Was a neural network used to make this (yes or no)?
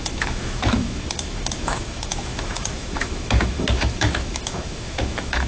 yes